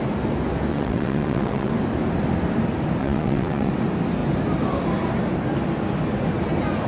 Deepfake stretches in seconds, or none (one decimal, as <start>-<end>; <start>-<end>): 0.7-1.7; 3.0-3.7